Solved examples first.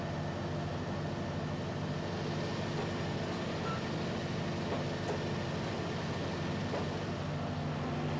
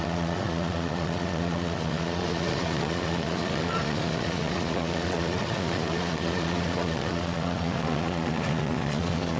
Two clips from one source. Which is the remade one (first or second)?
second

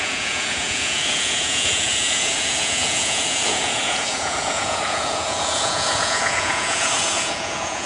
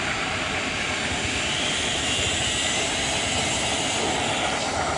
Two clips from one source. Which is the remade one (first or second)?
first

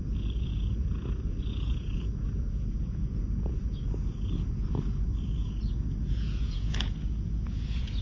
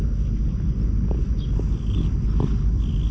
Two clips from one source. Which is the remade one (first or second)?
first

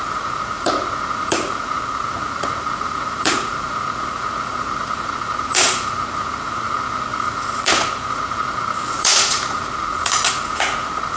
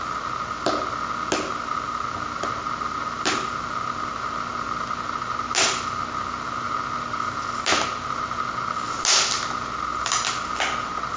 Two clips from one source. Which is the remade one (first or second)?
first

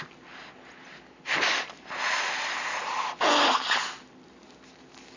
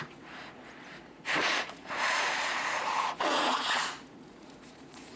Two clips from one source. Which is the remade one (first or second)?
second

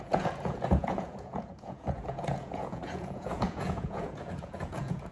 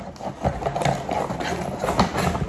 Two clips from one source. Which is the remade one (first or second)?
first